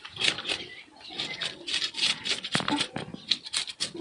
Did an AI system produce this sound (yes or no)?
no